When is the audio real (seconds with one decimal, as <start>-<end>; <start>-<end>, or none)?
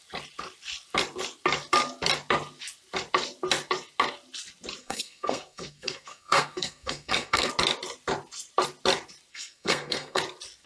0.0-4.8; 7.5-9.3; 10.2-10.7